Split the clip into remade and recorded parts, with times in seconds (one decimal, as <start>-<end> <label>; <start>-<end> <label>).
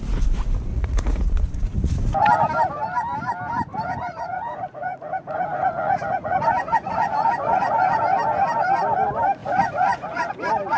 0.0-0.7 recorded; 0.7-1.9 remade; 1.9-3.7 recorded; 3.7-8.0 remade; 8.0-9.4 recorded; 9.4-10.3 remade; 10.3-10.8 recorded